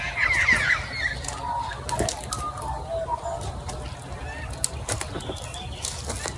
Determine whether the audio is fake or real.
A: real